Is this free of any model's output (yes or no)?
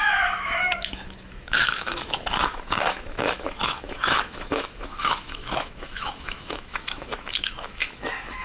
no